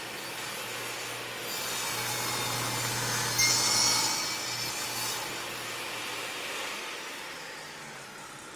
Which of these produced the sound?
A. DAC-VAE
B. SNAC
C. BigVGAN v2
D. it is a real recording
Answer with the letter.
D